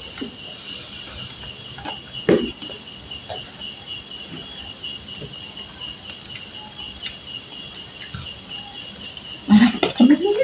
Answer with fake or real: real